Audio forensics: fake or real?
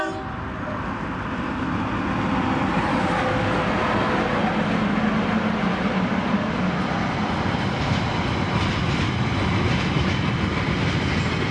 real